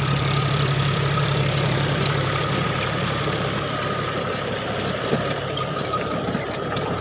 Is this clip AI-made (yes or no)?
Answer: yes